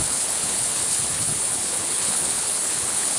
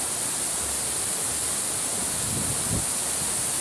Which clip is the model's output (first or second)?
first